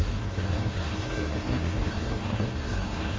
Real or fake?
fake